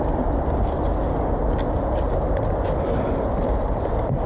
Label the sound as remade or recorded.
recorded